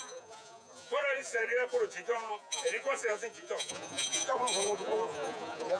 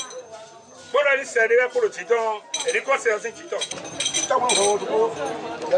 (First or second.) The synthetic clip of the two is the first